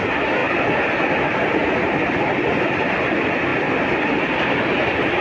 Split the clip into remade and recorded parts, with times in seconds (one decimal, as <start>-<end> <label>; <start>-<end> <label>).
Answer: 0.0-5.2 recorded